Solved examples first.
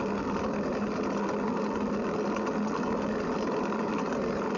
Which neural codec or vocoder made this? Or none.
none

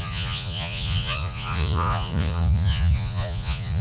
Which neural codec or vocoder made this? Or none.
vocoder, Vocos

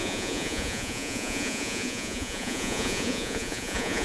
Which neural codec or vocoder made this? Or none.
vocoder, Vocos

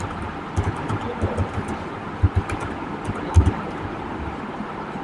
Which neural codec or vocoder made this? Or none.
none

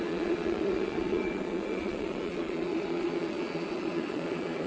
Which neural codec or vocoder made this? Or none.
vocoder, Vocos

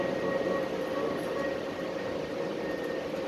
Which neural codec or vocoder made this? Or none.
none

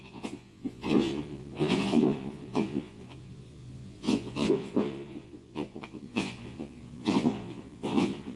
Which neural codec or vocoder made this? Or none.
vocoder, Vocos